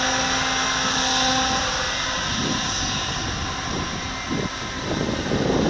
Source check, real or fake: real